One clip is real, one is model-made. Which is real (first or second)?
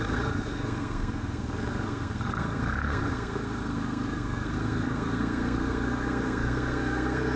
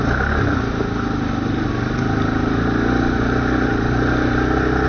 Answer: second